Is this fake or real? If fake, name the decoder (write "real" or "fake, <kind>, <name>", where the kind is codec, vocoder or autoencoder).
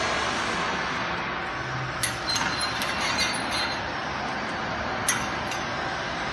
real